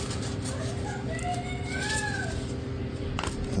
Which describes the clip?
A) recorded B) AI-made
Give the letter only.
A